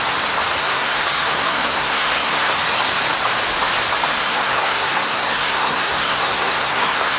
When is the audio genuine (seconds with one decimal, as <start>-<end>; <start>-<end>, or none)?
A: 0.0-0.6; 2.6-4.1